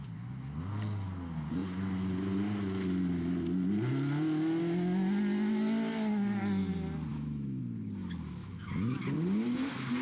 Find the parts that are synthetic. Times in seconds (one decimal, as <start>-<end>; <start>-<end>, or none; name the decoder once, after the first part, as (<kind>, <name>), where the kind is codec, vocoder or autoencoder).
7.1-7.6 (autoencoder, DAC-VAE); 8.4-9.0